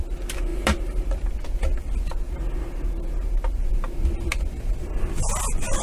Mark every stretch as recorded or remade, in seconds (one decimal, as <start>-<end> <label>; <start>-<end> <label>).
0.0-5.8 recorded

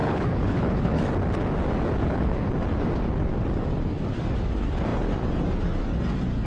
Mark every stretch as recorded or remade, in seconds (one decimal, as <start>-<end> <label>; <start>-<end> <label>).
0.0-1.0 remade; 1.0-2.0 recorded; 2.0-2.5 remade; 2.5-6.5 recorded

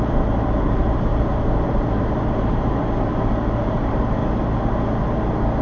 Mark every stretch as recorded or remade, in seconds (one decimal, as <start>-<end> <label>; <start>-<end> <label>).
0.0-2.8 remade; 2.8-3.6 recorded; 3.6-4.2 remade; 4.2-5.6 recorded

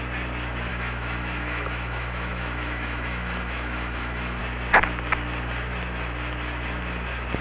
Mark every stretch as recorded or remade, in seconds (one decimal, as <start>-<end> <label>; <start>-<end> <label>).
0.0-0.7 recorded; 0.7-4.4 remade; 4.4-7.4 recorded